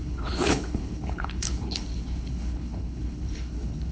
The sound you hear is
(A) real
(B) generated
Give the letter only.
B